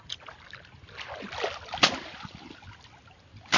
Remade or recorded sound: recorded